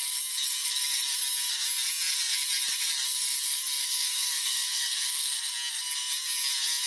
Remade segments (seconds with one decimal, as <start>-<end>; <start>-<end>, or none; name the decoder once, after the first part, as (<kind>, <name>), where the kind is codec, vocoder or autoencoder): 3.8-5.3 (codec, SNAC)